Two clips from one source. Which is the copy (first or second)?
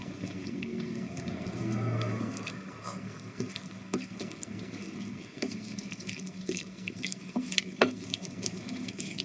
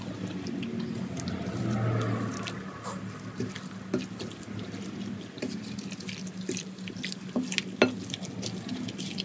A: first